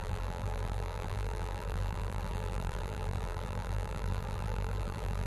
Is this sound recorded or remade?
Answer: remade